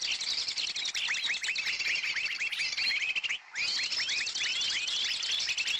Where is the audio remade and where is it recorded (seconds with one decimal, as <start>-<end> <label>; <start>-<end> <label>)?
0.0-5.8 recorded